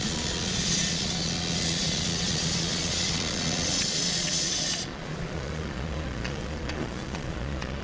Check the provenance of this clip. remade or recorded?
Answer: remade